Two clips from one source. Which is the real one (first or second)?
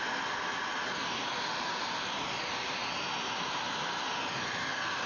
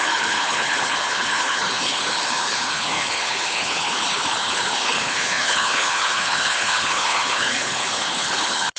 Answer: first